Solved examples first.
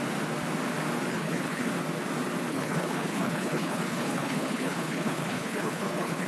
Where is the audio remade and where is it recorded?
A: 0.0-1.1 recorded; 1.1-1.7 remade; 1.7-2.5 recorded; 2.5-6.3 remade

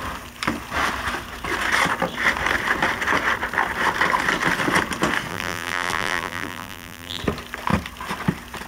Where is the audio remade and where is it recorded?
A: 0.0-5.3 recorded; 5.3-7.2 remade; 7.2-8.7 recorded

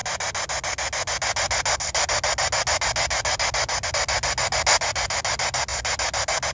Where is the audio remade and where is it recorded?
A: 0.0-6.5 recorded

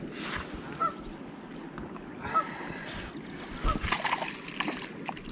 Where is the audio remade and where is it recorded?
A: 0.0-5.3 recorded

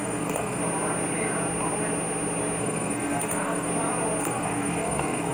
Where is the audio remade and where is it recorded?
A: 0.0-0.6 remade; 0.6-2.6 recorded; 2.6-3.7 remade; 3.7-4.2 recorded; 4.2-5.3 remade

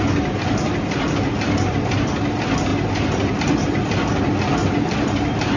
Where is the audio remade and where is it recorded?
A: 0.0-2.7 recorded; 2.7-3.3 remade; 3.3-5.6 recorded

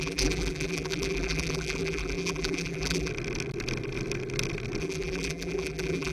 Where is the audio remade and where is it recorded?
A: 0.0-3.1 remade; 3.1-4.8 recorded; 4.8-6.1 remade